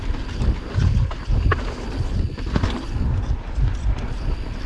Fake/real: real